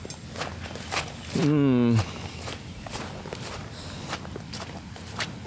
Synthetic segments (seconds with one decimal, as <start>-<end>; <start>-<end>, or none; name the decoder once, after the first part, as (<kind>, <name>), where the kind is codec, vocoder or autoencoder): 3.6-5.0 (vocoder, BigVGAN v2)